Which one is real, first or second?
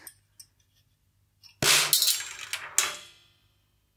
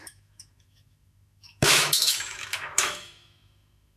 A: first